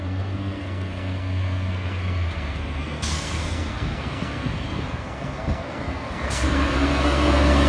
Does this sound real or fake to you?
fake